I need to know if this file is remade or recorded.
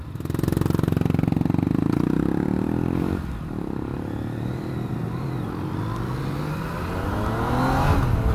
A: recorded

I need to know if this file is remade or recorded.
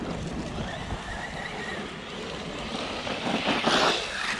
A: recorded